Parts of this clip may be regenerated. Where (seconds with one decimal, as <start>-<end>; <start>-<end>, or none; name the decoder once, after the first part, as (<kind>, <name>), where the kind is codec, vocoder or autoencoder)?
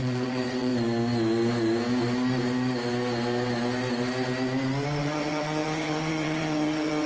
0.0-0.7 (vocoder, WaveNeXt); 5.0-7.1